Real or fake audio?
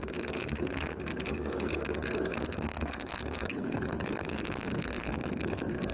fake